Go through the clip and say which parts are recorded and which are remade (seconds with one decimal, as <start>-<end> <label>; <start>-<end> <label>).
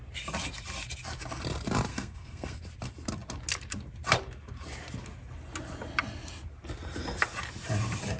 0.0-1.9 recorded; 1.9-2.6 remade; 2.6-8.2 recorded